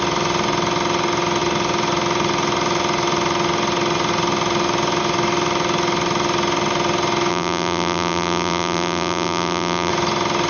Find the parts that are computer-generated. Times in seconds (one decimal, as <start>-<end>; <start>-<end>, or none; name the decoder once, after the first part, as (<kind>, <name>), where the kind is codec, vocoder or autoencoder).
7.3-9.9 (vocoder, BigVGAN v2)